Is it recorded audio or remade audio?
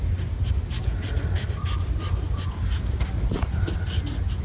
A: recorded